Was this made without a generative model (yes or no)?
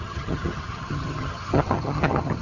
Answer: no